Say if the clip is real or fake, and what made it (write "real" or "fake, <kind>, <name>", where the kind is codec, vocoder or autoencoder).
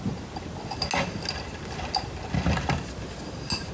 real